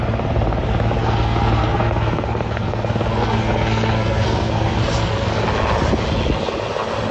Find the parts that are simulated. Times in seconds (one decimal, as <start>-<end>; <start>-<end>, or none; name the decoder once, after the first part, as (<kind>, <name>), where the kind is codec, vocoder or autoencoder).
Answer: 1.0-5.3 (codec, SNAC)